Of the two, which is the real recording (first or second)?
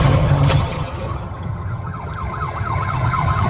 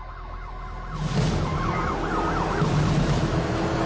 second